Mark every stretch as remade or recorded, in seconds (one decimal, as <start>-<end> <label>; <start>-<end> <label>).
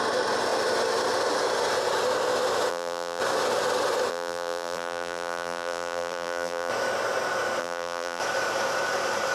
0.0-2.7 recorded; 2.7-3.2 remade; 3.2-4.1 recorded; 4.1-6.7 remade; 6.7-7.6 recorded; 7.6-8.2 remade; 8.2-9.3 recorded